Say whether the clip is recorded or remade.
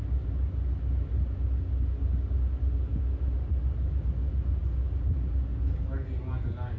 recorded